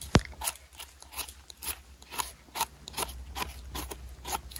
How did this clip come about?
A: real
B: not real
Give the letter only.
A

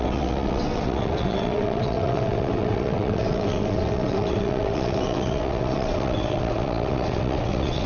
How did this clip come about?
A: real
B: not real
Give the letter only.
B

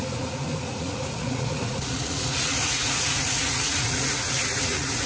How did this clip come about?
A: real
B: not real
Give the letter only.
B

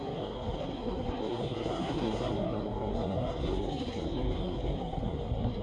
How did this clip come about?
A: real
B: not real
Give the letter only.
B